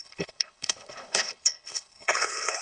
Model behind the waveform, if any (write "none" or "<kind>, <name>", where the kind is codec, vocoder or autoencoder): codec, HILCodec